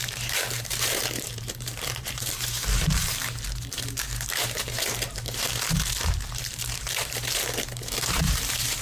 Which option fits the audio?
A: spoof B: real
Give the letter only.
A